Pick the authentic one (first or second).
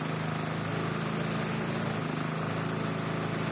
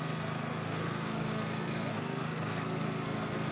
first